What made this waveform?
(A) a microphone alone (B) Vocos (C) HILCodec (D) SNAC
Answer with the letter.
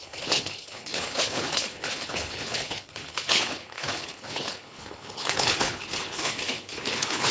C